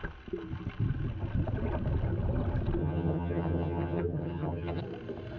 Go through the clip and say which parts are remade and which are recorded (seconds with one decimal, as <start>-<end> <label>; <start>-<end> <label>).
0.0-2.8 recorded; 2.8-4.8 remade; 4.8-5.4 recorded